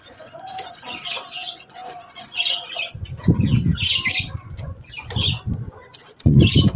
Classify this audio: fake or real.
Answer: fake